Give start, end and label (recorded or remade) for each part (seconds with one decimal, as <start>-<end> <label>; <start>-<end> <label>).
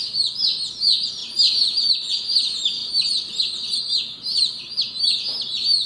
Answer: 0.0-5.9 recorded